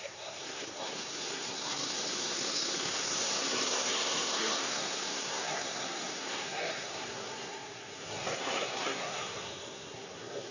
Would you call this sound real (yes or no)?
no